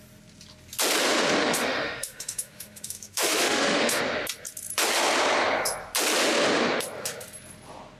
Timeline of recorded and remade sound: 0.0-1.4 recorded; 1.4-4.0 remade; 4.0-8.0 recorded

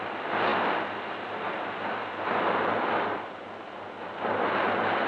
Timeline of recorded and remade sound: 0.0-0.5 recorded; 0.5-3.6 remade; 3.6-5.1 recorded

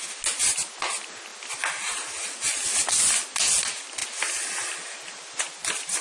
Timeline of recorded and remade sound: 0.0-6.0 recorded

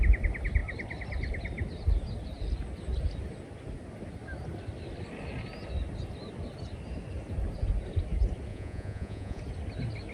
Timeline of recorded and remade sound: 0.0-8.5 recorded; 8.5-9.4 remade; 9.4-10.1 recorded